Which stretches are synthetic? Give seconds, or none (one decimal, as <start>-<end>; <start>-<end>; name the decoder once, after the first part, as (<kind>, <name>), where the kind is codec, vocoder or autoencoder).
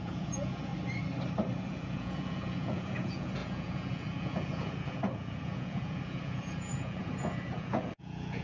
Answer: 0.0-0.7 (vocoder, Vocos); 1.6-8.4